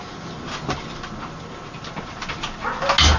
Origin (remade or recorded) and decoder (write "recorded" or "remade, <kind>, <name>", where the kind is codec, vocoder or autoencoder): recorded